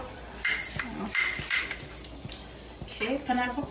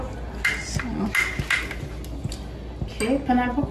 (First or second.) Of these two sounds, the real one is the second